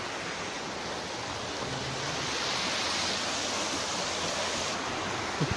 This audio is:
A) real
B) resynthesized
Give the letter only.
A